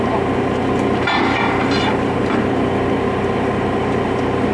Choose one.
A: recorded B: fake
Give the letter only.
A